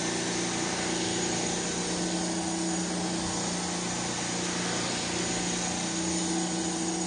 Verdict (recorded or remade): recorded